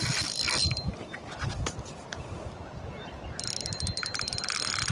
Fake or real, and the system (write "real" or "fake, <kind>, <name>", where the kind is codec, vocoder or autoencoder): real